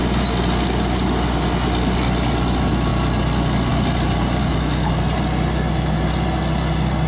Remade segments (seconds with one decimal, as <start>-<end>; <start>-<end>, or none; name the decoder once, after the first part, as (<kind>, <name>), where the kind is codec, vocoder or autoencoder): 4.4-4.9 (autoencoder, DAC-VAE)